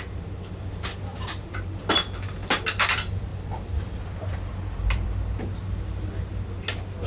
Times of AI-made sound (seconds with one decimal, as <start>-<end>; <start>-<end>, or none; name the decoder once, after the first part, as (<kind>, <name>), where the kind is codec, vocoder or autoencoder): 1.1-1.8 (vocoder, BigVGAN v2); 3.3-5.4